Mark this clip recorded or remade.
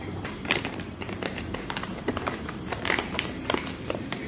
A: remade